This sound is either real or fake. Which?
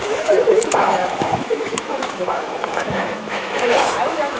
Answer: fake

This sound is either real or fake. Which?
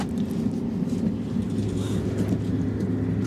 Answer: real